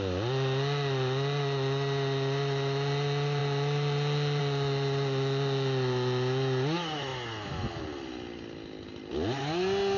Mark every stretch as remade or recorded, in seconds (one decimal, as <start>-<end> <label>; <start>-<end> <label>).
0.0-10.0 recorded

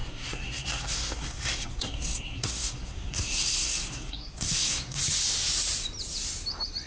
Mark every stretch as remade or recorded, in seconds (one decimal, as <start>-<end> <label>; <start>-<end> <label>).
0.0-5.0 remade; 5.0-6.9 recorded